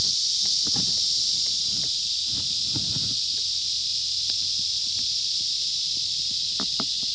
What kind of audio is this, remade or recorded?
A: recorded